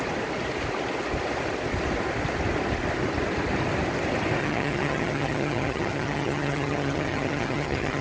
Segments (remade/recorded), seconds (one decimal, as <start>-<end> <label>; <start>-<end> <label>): 0.0-4.4 recorded; 4.4-8.0 remade